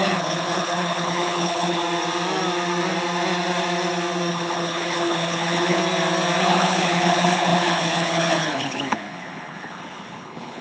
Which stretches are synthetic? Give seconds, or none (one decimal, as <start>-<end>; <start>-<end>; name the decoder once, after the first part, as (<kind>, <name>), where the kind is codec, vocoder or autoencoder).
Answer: 0.0-1.8 (codec, HILCodec); 4.3-5.8; 6.4-10.6